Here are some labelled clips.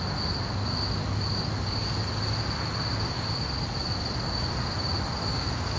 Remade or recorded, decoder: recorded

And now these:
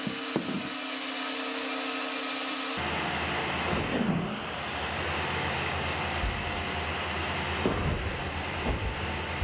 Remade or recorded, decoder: recorded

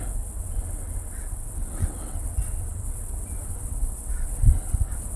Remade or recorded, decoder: remade, vocoder, WaveNeXt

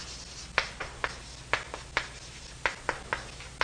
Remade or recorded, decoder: recorded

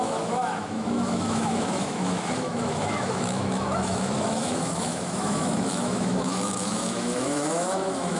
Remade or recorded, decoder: remade, autoencoder, DAC-VAE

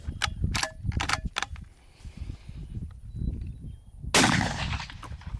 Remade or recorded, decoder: recorded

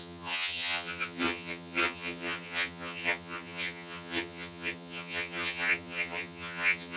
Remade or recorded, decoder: remade, vocoder, HiFi-GAN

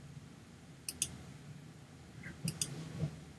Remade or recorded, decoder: recorded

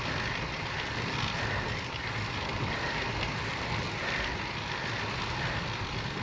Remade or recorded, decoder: recorded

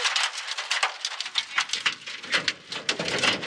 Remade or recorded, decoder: recorded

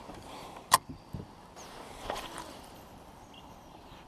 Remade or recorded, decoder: remade, vocoder, BigVGAN v2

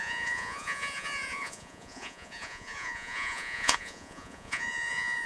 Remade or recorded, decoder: remade, vocoder, Vocos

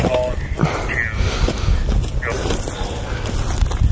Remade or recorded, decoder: recorded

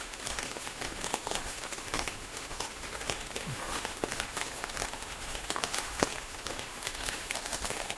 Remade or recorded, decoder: remade, autoencoder, DAC-VAE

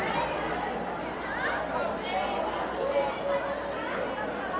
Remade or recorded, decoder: recorded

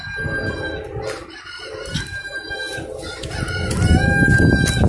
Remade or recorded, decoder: recorded